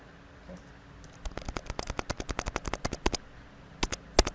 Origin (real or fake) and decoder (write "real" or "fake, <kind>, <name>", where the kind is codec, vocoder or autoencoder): real